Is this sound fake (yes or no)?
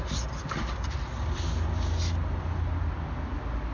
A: no